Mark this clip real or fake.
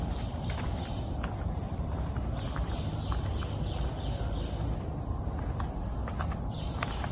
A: real